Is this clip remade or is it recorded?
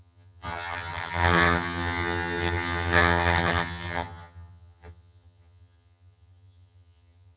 remade